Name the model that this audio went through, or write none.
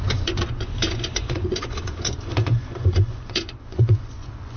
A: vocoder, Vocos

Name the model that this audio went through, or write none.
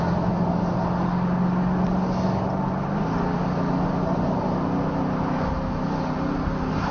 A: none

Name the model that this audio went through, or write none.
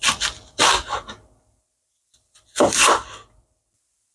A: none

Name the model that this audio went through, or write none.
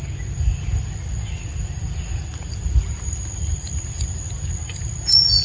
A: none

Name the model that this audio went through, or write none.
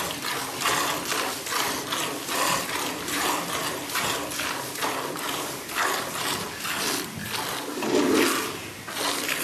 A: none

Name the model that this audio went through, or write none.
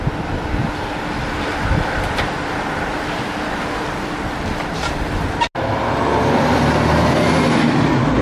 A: none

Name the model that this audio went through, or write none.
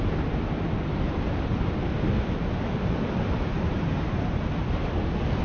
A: none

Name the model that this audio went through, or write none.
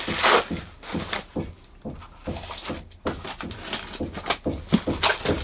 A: none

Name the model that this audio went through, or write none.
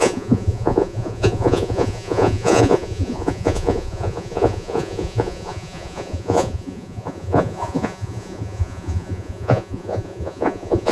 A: vocoder, Vocos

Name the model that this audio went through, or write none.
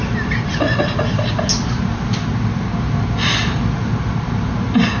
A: none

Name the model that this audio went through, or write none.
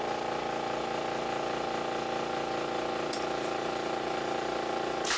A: none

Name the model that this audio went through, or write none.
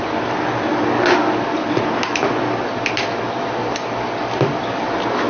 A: none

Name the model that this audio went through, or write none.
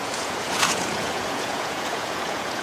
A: vocoder, Vocos